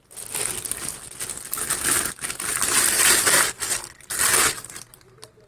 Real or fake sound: real